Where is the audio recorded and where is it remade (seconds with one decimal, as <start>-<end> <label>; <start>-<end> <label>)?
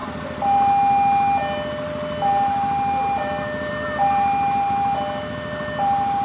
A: 0.0-6.2 recorded